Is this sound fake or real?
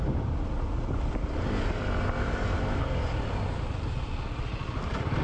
real